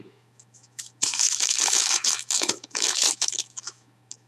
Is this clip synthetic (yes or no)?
yes